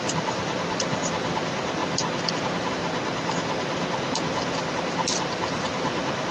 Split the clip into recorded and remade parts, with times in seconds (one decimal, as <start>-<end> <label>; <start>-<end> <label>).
0.0-1.8 remade; 1.8-2.3 recorded; 2.3-2.8 remade; 2.8-4.7 recorded; 4.7-6.3 remade

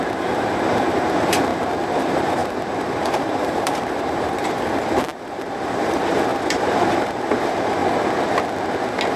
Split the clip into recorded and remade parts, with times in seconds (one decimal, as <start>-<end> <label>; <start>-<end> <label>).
0.0-1.5 remade; 1.5-2.0 recorded; 2.0-7.8 remade; 7.8-9.2 recorded

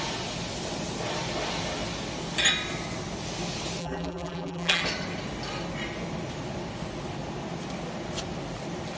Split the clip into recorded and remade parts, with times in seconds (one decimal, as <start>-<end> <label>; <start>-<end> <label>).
0.0-3.8 recorded; 3.8-4.8 remade; 4.8-9.0 recorded